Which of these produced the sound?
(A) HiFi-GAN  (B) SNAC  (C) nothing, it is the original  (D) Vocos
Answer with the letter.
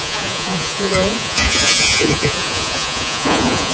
D